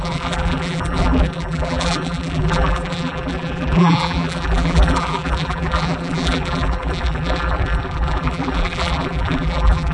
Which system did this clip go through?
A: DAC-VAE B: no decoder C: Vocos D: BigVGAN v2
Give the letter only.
D